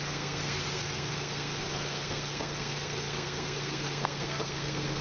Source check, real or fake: fake